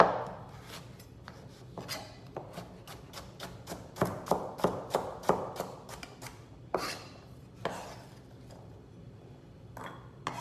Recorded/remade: recorded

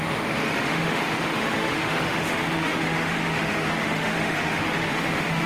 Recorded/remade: remade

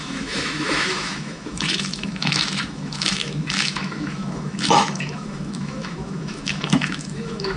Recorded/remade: remade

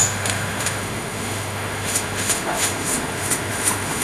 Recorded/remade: remade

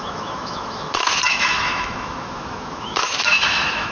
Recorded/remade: remade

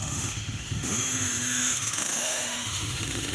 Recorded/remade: remade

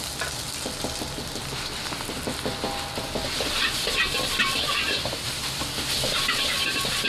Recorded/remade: recorded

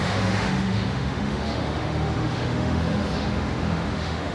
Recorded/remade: remade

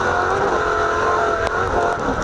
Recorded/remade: recorded